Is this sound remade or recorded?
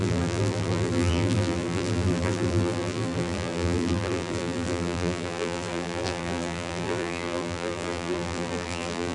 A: remade